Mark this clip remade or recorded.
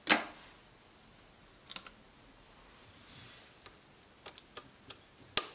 recorded